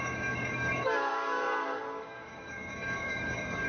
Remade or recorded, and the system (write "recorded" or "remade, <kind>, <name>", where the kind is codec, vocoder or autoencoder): remade, codec, DAC